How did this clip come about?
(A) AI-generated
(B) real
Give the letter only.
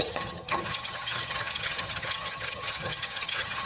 A